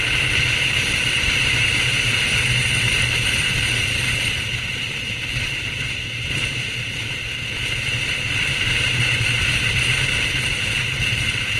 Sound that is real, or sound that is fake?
fake